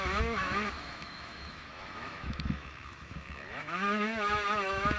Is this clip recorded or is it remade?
remade